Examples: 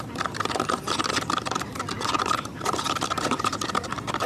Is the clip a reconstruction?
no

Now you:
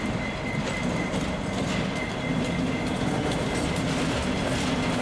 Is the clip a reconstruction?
no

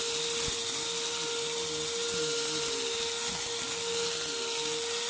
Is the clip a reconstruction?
no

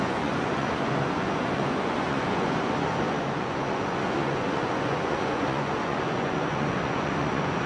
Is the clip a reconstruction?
yes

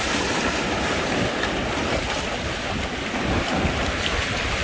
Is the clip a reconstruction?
no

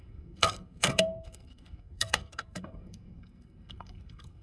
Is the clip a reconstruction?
yes